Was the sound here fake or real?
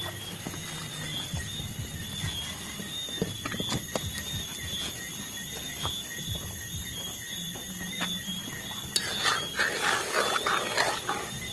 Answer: real